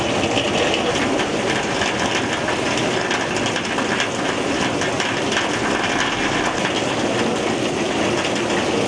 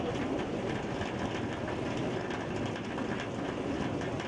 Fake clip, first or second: second